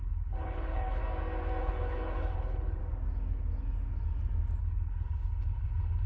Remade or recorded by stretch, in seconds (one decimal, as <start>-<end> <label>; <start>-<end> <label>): 0.0-1.0 remade; 1.0-1.6 recorded; 1.6-2.8 remade; 2.8-4.6 recorded; 4.6-6.1 remade

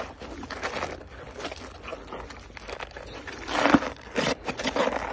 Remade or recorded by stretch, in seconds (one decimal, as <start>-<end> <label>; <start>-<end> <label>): 0.0-5.1 recorded

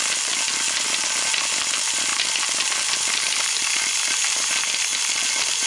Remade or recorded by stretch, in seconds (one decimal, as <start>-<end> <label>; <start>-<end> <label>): 0.0-5.7 recorded

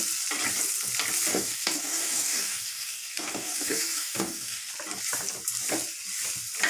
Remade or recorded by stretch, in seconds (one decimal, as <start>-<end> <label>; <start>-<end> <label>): 0.0-1.3 recorded; 1.3-4.7 remade; 4.7-6.7 recorded

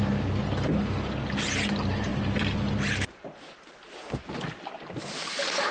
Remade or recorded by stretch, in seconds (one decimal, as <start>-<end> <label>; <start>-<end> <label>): 0.0-5.7 recorded

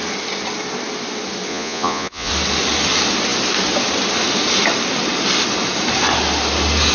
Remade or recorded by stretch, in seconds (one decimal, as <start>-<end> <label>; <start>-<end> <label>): 0.0-1.5 recorded; 1.5-2.3 remade; 2.3-6.9 recorded